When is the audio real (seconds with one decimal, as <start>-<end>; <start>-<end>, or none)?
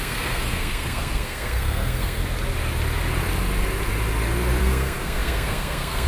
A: 2.2-4.6